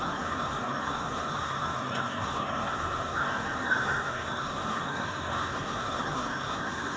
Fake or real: fake